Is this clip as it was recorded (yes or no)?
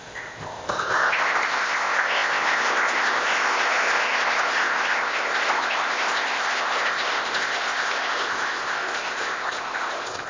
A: no